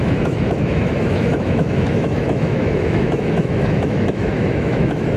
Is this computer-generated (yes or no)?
yes